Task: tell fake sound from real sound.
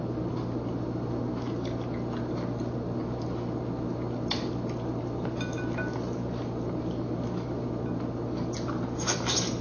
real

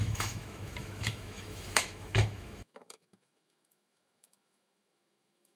fake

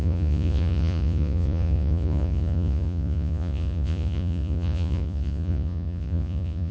fake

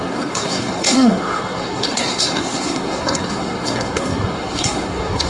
fake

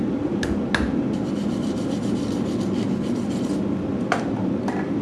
real